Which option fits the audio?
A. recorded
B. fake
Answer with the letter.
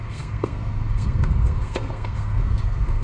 B